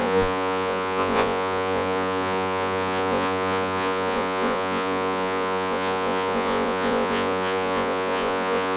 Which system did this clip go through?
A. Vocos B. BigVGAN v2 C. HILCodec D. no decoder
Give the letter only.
A